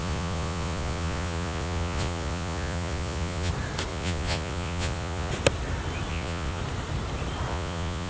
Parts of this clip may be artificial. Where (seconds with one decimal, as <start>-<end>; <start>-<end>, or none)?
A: 0.0-3.5; 3.9-5.3; 6.1-6.6; 7.5-8.1